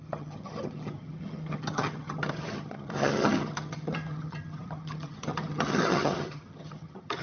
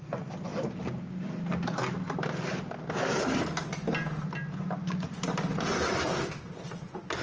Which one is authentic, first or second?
second